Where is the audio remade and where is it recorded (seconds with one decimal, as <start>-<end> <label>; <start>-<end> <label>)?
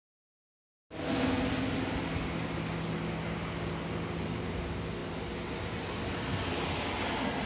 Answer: 0.0-7.5 recorded